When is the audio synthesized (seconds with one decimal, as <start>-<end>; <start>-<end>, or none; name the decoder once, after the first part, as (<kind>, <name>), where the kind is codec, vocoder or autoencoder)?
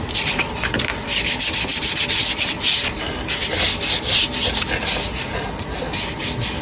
none